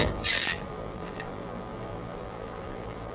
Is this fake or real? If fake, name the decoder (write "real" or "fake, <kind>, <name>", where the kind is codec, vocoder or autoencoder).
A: fake, vocoder, BigVGAN v2